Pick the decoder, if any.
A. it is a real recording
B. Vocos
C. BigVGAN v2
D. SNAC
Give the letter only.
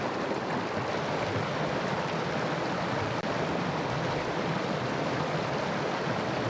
A